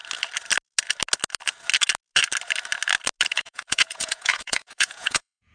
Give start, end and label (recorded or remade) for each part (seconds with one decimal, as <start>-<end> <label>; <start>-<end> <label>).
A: 0.0-3.3 recorded; 3.3-5.5 remade